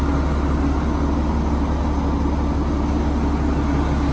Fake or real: real